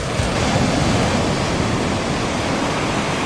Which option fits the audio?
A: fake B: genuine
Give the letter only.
B